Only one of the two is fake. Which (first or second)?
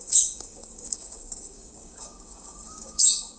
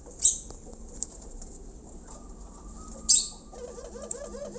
first